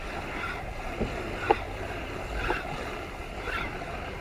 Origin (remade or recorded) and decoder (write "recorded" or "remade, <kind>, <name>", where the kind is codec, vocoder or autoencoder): recorded